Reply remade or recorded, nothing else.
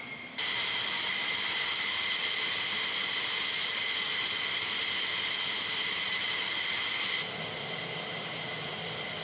remade